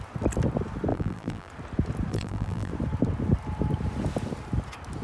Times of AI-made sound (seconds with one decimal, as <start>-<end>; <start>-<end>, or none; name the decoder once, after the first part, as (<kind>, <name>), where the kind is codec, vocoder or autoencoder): 0.9-1.5 (vocoder, BigVGAN v2); 2.1-2.7